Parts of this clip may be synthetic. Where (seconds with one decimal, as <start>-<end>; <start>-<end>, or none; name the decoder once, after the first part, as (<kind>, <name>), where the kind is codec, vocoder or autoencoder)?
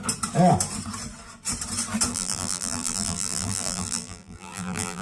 2.1-5.0 (vocoder, BigVGAN v2)